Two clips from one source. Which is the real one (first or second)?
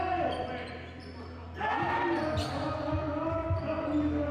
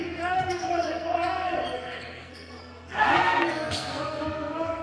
first